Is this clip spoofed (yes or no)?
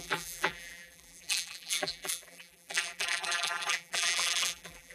yes